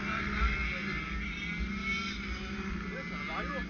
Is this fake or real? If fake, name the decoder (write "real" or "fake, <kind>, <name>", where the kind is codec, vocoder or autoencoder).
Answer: real